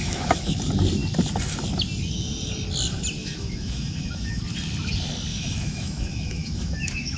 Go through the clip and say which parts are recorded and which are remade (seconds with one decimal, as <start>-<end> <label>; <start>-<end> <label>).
0.0-0.6 remade; 0.6-3.2 recorded; 3.2-4.4 remade; 4.4-5.3 recorded; 5.3-7.2 remade